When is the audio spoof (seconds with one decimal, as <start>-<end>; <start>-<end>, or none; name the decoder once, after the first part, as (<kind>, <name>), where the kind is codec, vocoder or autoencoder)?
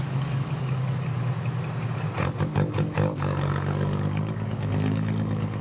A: 0.0-1.1 (codec, DAC); 2.4-5.6